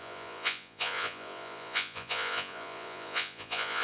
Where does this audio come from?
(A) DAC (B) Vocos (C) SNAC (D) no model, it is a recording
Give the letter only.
B